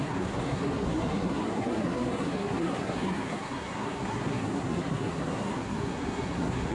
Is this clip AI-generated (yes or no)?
yes